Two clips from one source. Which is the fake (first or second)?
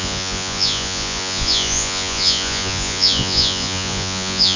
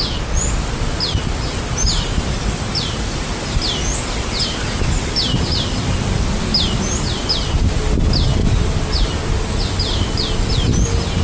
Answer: first